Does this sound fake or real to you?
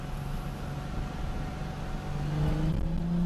real